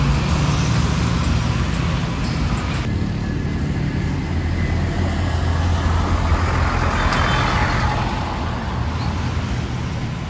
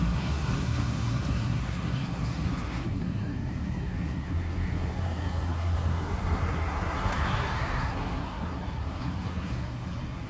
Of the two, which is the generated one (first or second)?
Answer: second